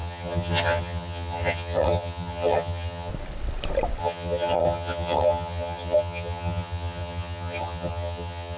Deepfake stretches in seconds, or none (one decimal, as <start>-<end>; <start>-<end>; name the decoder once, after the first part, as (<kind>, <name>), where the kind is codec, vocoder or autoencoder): 0.0-3.1 (vocoder, HiFi-GAN); 4.0-8.6